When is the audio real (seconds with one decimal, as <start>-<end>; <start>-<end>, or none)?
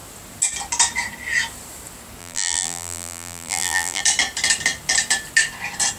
0.0-2.2; 4.0-6.0